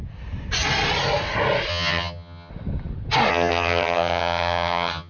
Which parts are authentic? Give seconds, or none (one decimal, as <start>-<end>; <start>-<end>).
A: 0.0-1.7; 2.5-3.3